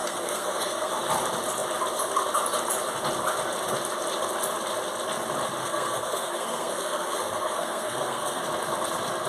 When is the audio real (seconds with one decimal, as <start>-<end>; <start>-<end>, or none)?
0.9-5.6; 8.4-9.3